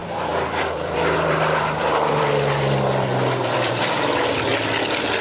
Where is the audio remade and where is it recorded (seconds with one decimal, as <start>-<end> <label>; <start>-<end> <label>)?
0.0-4.5 remade; 4.5-5.2 recorded